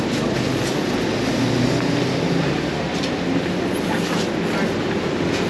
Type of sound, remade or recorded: recorded